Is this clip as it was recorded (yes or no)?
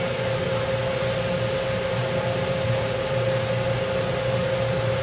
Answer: yes